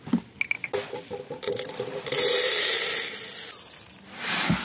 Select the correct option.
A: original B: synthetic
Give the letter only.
A